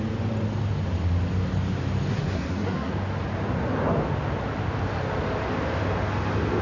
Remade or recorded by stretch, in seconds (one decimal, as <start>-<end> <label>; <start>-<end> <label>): 0.0-2.1 recorded; 2.1-2.9 remade; 2.9-6.6 recorded